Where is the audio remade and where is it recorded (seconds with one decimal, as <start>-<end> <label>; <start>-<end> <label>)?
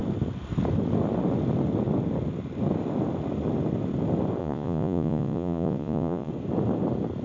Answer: 0.0-4.4 recorded; 4.4-6.3 remade; 6.3-7.2 recorded